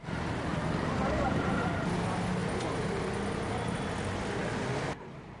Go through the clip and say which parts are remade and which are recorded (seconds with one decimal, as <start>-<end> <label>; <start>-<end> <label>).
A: 0.0-0.5 recorded; 0.5-2.0 remade; 2.0-4.4 recorded; 4.4-5.4 remade